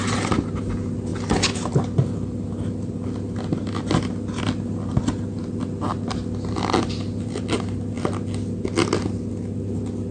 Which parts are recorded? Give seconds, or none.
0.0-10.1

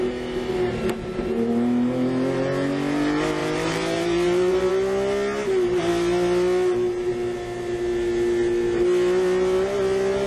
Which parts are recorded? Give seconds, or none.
0.0-3.4; 4.7-10.3

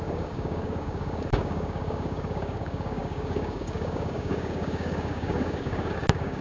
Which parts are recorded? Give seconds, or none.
none

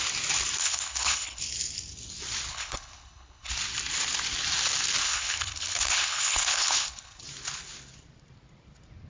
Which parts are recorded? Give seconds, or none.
0.0-0.6; 1.4-2.5; 3.5-5.0; 7.2-9.1